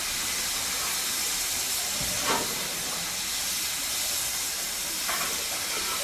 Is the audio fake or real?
real